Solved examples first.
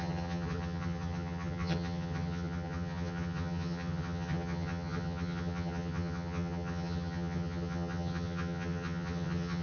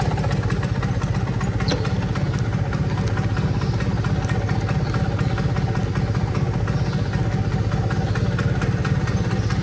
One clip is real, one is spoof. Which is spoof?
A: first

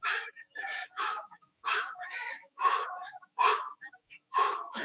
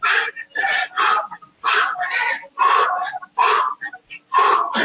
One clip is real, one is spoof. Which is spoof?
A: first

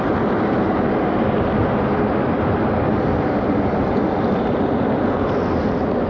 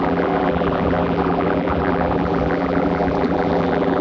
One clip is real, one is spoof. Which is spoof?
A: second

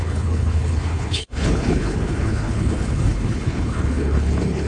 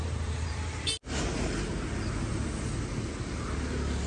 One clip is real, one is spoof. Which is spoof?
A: first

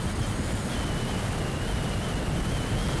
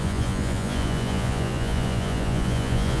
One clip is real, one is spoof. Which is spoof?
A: second